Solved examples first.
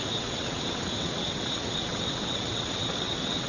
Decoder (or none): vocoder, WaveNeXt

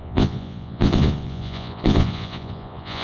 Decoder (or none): vocoder, Vocos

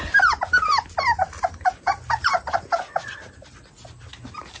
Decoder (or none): none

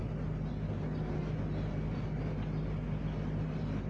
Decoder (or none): none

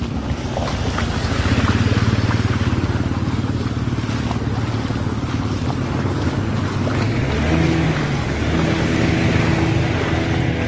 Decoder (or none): none